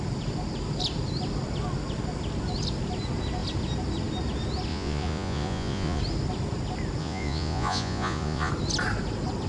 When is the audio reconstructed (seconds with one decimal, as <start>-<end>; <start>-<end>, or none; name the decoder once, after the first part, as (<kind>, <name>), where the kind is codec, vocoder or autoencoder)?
4.7-6.0 (vocoder, Vocos); 7.0-8.5